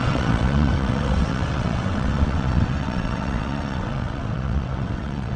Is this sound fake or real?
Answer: fake